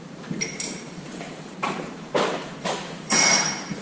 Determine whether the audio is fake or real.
fake